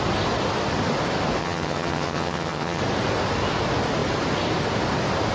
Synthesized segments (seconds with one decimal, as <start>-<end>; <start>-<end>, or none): 1.4-2.8